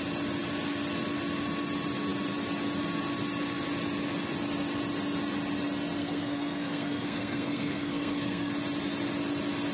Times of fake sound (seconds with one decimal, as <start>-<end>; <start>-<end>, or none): 6.0-8.5